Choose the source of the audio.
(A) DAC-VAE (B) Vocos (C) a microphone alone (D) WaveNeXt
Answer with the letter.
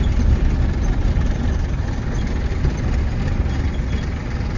C